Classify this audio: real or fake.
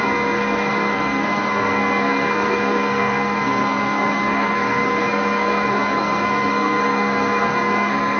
fake